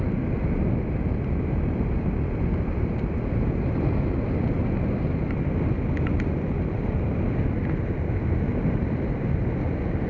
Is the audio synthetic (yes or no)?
no